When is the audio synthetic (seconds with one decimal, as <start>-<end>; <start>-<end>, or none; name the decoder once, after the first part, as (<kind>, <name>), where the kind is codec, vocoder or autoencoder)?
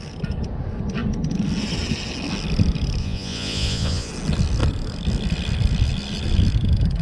3.0-4.1 (vocoder, Vocos)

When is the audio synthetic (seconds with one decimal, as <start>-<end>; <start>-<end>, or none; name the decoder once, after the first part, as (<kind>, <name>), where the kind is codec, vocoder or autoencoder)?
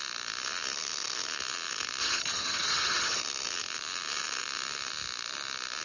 2.0-3.2 (vocoder, HiFi-GAN)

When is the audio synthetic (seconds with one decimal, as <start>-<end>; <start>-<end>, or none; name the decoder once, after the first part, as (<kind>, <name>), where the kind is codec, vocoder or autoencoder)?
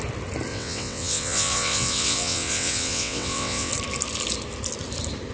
0.5-3.7 (vocoder, WaveNeXt)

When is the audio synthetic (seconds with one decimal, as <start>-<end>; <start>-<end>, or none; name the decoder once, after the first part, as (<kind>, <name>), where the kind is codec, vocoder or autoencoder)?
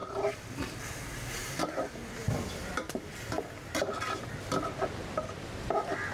0.0-0.8 (vocoder, BigVGAN v2); 1.4-4.2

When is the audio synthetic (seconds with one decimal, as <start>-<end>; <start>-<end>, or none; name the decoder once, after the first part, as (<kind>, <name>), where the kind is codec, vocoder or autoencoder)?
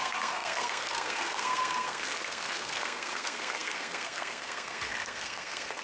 0.0-5.8 (codec, SNAC)